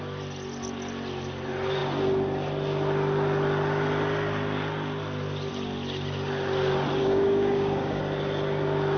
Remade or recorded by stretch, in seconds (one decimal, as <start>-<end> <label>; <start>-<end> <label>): 0.0-7.0 recorded; 7.0-8.0 remade; 8.0-9.0 recorded